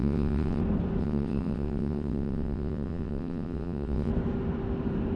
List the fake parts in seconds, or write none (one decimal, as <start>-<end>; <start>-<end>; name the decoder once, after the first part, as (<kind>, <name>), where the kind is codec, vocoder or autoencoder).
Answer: 0.0-0.6 (vocoder, WaveNeXt); 1.0-4.1